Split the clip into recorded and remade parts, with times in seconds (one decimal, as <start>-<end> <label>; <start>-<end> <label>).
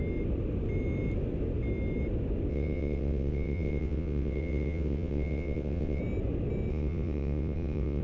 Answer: 0.0-2.5 recorded; 2.5-6.0 remade; 6.0-6.7 recorded; 6.7-8.0 remade